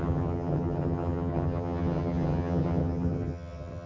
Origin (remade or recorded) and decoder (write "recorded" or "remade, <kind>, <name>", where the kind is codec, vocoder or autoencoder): remade, vocoder, HiFi-GAN